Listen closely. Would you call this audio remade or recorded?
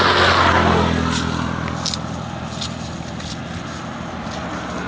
recorded